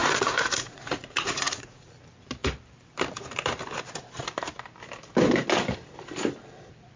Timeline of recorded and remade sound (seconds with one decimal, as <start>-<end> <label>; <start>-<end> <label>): 0.0-1.9 remade; 1.9-7.0 recorded